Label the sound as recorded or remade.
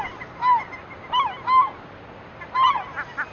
recorded